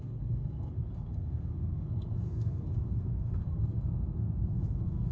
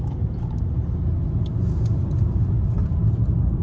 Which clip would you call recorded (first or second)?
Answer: second